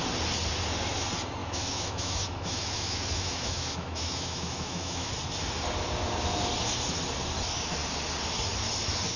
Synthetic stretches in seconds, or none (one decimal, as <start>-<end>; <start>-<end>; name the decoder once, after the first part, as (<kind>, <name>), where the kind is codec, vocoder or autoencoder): 1.4-5.1 (autoencoder, DAC-VAE)